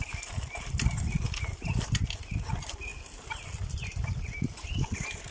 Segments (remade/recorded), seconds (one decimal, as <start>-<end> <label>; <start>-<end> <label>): 0.0-5.3 recorded

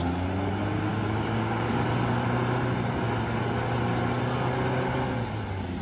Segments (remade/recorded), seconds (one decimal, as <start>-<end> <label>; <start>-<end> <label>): 0.0-0.9 recorded; 0.9-1.7 remade; 1.7-5.8 recorded

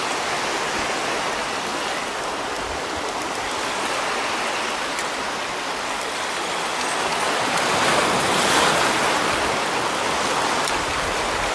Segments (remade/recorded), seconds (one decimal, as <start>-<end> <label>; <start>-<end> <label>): 0.0-11.5 recorded

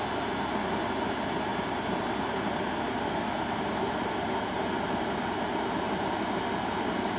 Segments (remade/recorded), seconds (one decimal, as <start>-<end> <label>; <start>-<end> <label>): 0.0-7.2 recorded

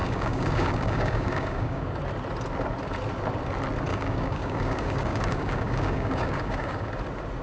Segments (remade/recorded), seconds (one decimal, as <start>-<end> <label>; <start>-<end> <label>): 0.0-2.0 remade; 2.0-3.9 recorded; 3.9-6.9 remade; 6.9-7.4 recorded